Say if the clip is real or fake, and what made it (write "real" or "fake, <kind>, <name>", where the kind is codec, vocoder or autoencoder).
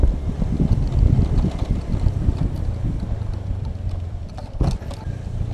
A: real